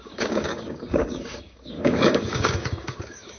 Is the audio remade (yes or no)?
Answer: yes